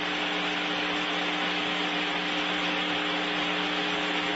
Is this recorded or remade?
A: recorded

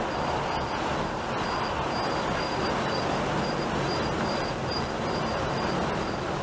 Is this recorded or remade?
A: recorded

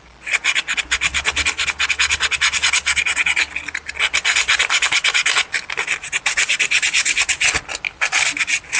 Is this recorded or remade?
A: recorded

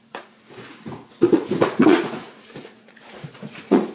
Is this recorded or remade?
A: remade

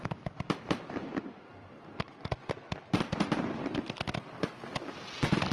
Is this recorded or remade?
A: recorded